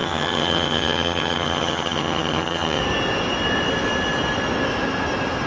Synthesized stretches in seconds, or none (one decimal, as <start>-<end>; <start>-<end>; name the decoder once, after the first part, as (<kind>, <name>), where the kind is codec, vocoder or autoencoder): 0.0-2.8 (vocoder, HiFi-GAN)